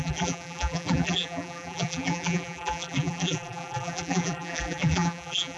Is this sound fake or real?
fake